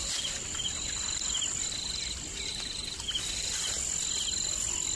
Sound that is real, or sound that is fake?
real